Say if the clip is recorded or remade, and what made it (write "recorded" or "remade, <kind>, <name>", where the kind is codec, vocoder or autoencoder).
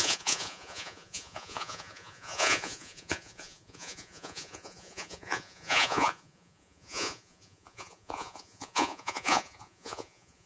remade, vocoder, Vocos